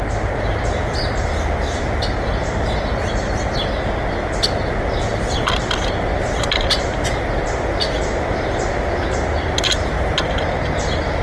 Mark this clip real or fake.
real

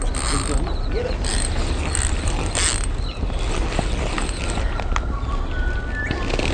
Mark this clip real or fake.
real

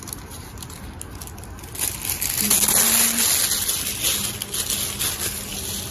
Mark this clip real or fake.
real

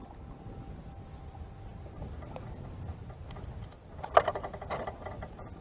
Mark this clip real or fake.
real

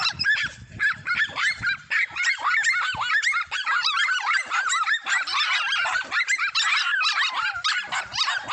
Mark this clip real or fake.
fake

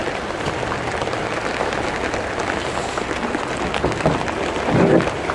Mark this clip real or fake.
real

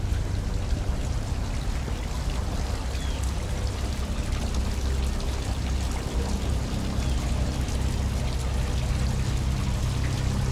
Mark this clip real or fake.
real